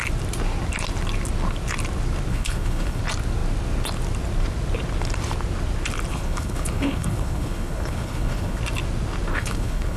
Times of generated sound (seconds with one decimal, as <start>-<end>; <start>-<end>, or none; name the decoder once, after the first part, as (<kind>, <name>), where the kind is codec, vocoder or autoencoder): 2.3-3.0 (codec, HILCodec); 6.1-8.6; 9.3-10.0